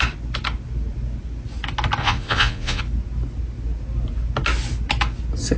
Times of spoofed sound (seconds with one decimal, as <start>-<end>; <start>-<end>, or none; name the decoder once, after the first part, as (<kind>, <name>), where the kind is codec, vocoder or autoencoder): 2.0-2.8 (vocoder, Vocos)